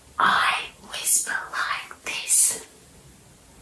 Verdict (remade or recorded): recorded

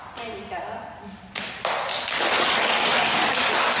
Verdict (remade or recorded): recorded